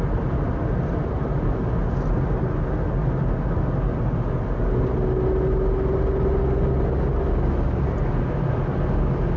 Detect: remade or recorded recorded